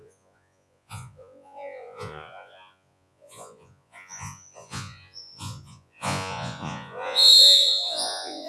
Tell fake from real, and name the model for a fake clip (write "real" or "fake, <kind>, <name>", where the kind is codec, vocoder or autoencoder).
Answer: fake, vocoder, Vocos